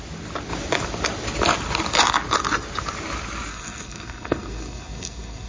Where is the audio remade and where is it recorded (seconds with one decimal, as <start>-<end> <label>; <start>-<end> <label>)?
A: 0.0-3.5 recorded; 3.5-5.5 remade